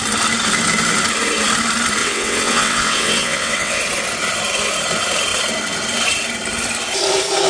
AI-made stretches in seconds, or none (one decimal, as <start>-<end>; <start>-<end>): 2.0-3.8